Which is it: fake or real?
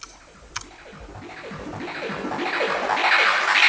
real